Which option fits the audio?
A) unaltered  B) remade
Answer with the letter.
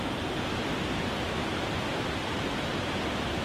A